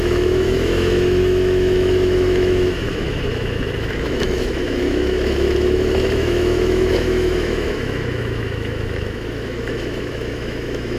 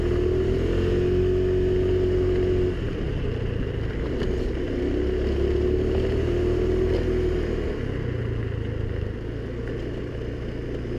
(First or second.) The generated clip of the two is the first